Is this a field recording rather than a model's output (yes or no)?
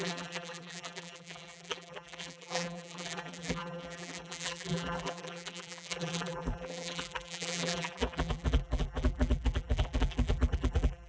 no